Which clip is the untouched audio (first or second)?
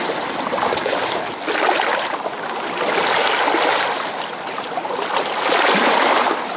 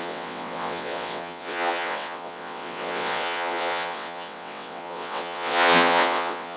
first